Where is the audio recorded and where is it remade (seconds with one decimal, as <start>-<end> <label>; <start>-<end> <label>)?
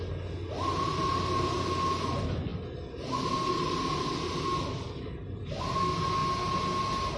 0.0-7.2 recorded